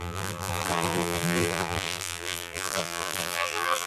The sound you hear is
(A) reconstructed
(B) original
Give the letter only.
A